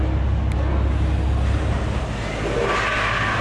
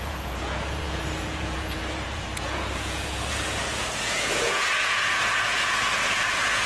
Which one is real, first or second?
first